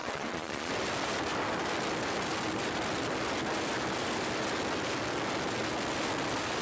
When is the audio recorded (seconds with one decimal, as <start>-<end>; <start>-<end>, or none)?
0.7-6.6